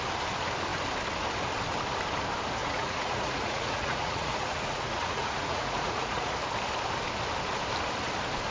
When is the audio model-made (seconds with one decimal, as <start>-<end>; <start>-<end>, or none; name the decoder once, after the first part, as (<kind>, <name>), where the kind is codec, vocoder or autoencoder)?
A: 2.6-6.3 (vocoder, Vocos)